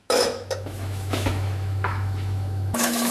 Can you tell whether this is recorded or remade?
remade